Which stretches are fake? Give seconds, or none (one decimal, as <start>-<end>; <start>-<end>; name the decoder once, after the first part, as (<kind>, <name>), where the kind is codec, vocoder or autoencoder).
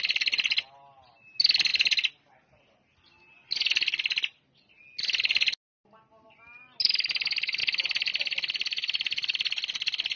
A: none